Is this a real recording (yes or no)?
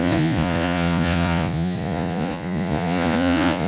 no